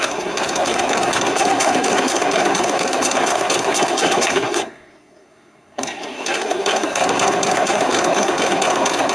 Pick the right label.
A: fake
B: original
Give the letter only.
A